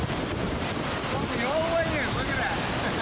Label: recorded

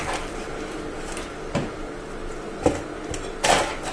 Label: recorded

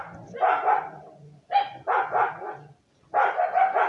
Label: recorded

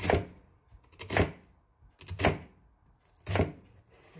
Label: recorded